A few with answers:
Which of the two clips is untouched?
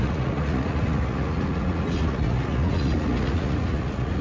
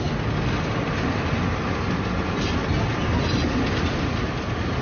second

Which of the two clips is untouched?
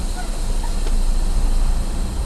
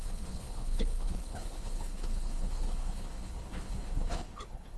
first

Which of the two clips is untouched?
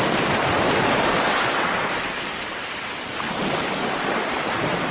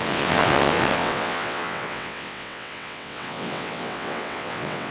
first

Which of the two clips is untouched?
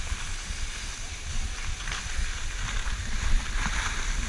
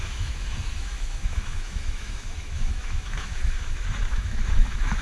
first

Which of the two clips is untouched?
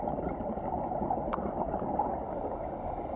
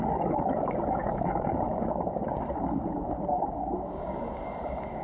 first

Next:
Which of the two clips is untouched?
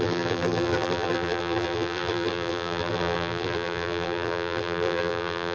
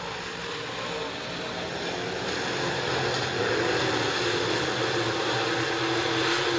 second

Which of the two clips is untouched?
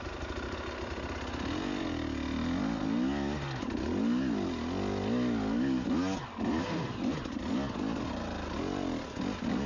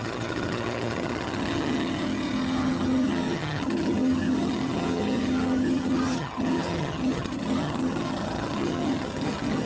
first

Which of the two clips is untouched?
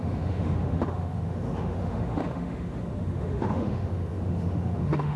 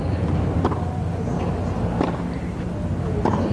second